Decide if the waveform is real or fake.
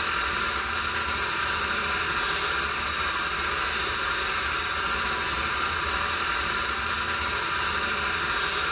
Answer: real